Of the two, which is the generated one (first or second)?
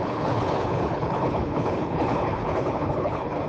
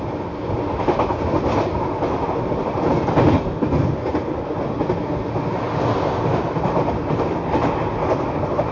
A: first